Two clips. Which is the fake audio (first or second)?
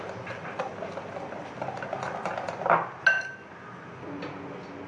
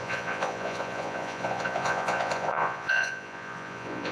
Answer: second